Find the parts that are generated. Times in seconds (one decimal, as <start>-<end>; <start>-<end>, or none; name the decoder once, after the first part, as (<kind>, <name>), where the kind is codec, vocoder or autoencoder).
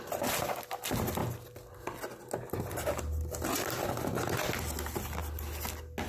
none